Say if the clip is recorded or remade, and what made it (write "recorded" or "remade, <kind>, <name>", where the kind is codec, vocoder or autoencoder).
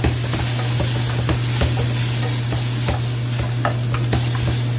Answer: recorded